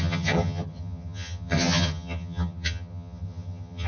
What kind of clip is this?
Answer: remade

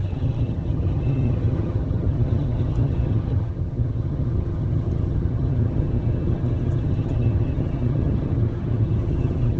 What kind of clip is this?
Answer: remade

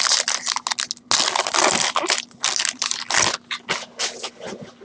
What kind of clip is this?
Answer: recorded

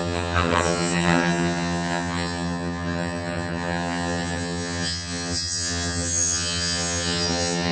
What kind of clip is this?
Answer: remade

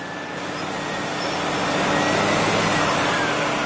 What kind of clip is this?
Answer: recorded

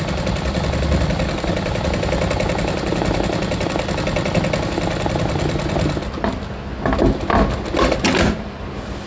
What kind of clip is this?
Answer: recorded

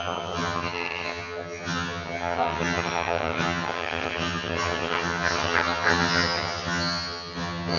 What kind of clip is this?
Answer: remade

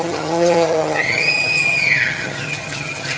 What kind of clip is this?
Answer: remade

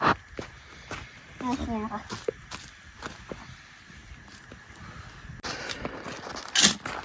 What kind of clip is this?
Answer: recorded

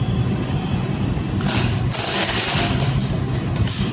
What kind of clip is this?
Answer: recorded